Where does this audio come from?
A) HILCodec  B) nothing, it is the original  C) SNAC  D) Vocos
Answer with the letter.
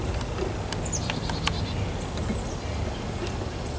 B